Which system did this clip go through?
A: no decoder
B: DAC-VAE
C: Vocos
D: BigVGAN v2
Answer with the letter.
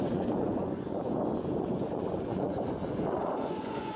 C